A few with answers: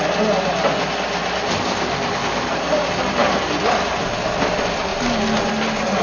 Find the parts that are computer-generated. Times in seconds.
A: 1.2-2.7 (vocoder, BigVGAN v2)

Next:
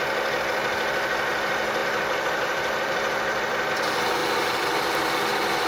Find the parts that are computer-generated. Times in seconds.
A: 1.8-3.7 (vocoder, BigVGAN v2); 4.2-5.1

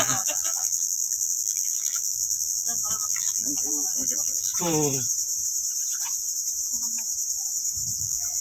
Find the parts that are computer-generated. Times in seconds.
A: 0.0-4.5 (vocoder, BigVGAN v2); 8.0-8.4

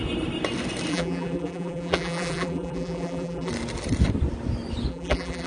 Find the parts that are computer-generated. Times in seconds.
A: 0.9-3.5 (vocoder, BigVGAN v2); 4.9-5.5

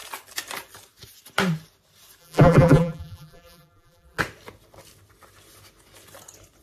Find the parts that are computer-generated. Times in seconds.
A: 2.2-4.2 (vocoder, BigVGAN v2)

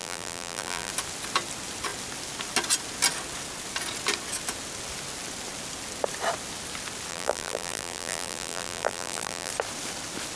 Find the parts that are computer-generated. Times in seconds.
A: 0.0-0.9 (vocoder, BigVGAN v2); 7.1-9.5